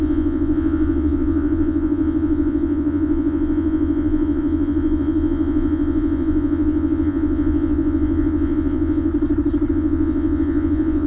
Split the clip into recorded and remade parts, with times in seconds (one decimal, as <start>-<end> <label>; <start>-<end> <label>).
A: 0.0-9.1 remade; 9.1-9.7 recorded; 9.7-11.1 remade